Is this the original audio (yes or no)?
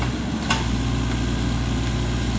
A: yes